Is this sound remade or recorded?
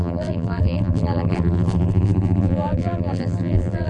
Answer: remade